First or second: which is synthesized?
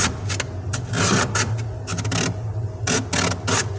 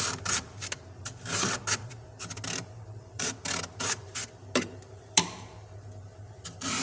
second